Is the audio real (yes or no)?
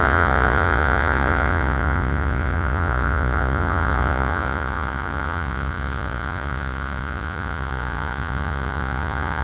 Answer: no